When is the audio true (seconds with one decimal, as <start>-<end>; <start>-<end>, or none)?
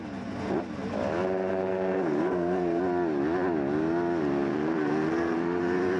0.0-1.5; 2.8-4.5; 5.6-6.0